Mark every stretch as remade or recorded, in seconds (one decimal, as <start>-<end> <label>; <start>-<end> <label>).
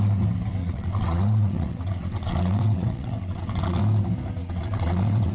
0.0-0.6 recorded; 0.6-3.8 remade; 3.8-4.4 recorded; 4.4-5.3 remade